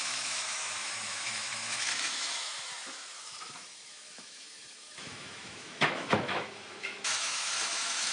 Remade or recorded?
remade